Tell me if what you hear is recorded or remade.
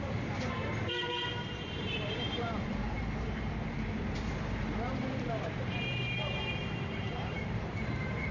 remade